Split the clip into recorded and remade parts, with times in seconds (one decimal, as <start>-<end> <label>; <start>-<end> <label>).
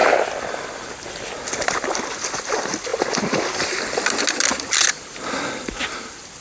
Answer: 0.0-6.4 recorded